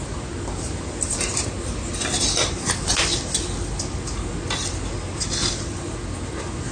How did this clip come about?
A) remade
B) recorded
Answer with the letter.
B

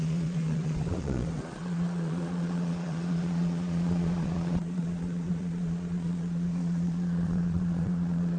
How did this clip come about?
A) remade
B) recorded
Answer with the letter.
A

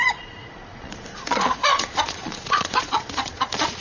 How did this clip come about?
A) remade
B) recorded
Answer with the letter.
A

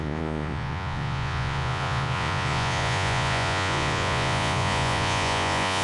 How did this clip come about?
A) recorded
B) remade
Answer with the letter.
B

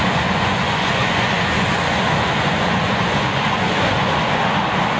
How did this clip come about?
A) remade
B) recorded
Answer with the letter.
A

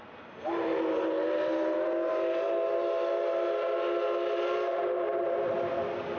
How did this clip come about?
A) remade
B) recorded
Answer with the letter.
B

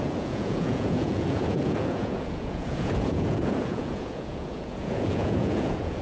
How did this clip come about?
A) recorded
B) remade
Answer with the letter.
B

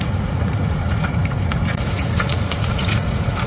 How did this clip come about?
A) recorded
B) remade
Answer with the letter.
B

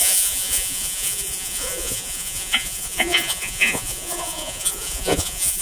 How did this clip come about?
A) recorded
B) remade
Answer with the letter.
B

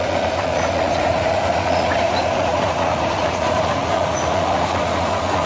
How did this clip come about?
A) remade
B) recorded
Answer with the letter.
A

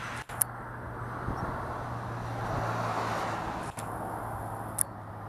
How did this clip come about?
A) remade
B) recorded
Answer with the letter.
B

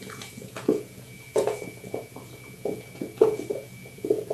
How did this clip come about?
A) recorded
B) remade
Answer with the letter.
B